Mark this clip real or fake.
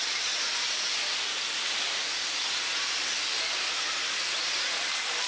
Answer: real